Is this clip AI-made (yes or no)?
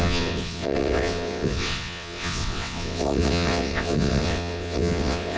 yes